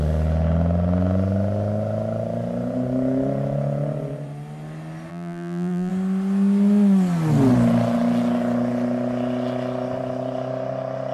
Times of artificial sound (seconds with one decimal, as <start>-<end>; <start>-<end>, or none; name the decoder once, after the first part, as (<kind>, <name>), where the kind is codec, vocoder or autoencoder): 5.1-5.9 (vocoder, BigVGAN v2)